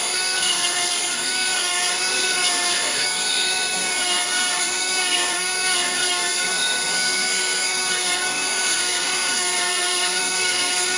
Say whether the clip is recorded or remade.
remade